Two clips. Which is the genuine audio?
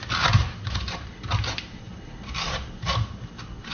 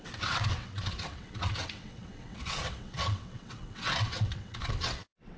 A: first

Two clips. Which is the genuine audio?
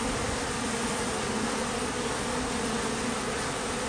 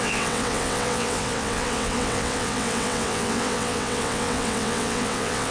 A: first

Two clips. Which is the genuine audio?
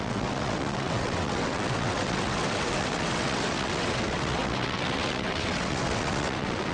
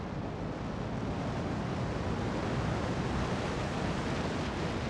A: second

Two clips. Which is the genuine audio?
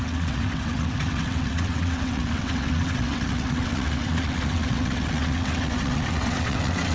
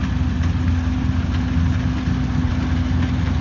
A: second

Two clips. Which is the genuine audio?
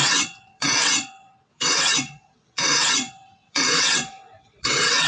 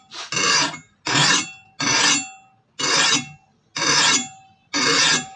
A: second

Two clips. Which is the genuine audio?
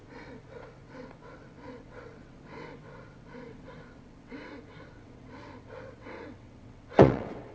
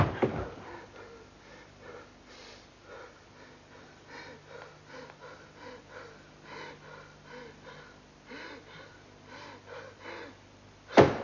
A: second